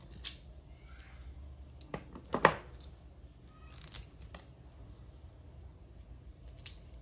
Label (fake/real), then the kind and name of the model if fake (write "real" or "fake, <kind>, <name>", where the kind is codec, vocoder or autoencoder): real